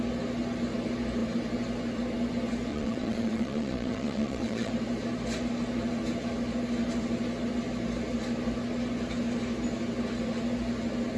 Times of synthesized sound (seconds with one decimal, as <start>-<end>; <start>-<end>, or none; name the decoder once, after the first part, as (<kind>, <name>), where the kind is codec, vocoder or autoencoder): 2.7-4.7 (vocoder, Vocos)